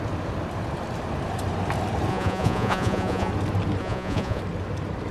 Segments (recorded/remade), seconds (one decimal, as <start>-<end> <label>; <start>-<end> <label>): 0.0-2.1 recorded; 2.1-3.3 remade; 3.3-3.8 recorded; 3.8-4.4 remade; 4.4-5.1 recorded